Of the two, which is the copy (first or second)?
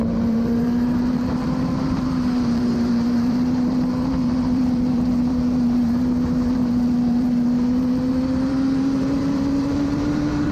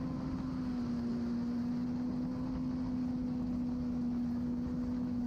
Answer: first